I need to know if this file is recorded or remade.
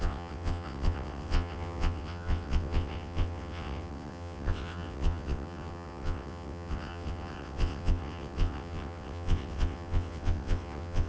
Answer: remade